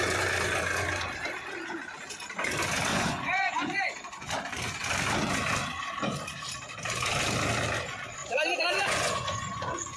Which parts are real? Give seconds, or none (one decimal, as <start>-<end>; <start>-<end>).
0.0-2.9; 4.3-8.2